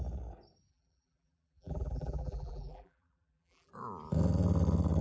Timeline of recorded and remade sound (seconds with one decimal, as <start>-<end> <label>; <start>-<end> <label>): 0.0-0.7 recorded; 0.7-3.7 remade; 3.7-5.0 recorded